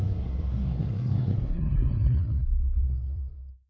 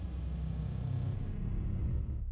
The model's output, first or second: first